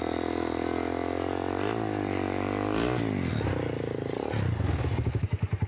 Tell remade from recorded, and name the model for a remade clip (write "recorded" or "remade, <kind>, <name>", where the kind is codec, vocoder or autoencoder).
recorded